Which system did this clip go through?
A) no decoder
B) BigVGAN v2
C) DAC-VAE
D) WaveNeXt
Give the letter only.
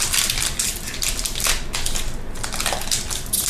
A